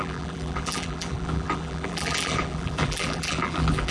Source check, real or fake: fake